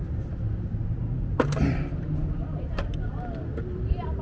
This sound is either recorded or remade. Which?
recorded